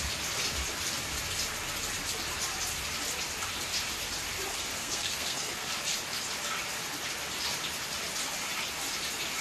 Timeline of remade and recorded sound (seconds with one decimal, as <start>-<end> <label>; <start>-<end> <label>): 0.0-4.7 recorded; 4.7-5.7 remade; 5.7-9.4 recorded